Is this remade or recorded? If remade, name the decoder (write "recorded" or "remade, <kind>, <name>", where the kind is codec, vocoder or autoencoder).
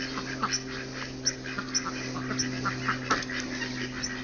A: recorded